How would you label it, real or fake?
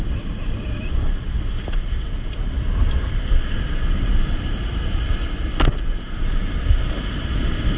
real